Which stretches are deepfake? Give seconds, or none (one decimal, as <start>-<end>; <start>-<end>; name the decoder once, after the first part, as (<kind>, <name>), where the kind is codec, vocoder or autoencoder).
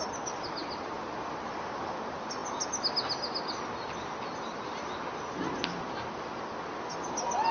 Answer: 0.6-1.5 (vocoder, BigVGAN v2)